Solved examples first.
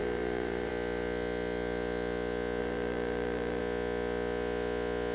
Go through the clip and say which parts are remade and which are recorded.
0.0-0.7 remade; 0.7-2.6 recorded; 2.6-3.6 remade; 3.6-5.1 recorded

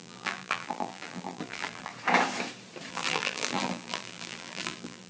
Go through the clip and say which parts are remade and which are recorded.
0.0-1.9 remade; 1.9-2.9 recorded; 2.9-5.1 remade

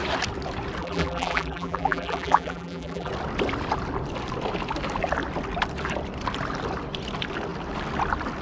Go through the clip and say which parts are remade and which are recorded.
0.0-0.8 recorded; 0.8-3.1 remade; 3.1-8.4 recorded

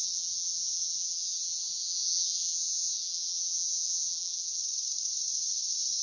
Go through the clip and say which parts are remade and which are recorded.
0.0-4.6 remade; 4.6-6.0 recorded